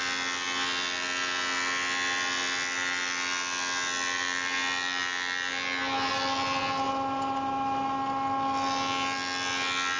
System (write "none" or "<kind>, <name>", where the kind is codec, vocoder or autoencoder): none